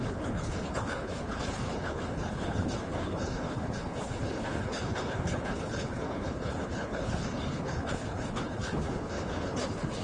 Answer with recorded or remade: remade